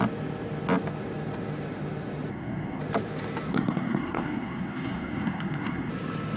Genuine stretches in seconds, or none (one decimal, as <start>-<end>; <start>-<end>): 0.0-2.3; 2.8-3.5; 5.9-6.4